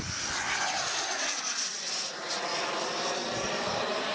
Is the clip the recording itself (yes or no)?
yes